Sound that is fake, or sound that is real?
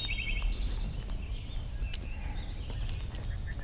real